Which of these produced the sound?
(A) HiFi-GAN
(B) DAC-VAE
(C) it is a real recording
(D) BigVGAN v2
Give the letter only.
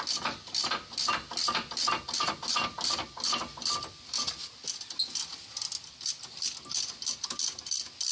C